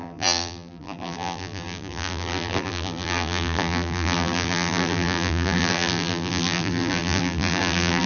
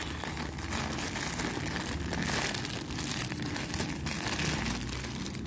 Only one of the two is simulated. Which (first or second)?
first